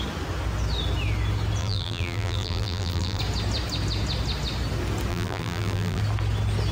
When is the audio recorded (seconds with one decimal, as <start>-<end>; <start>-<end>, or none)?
0.0-1.6; 3.2-5.1; 6.0-6.7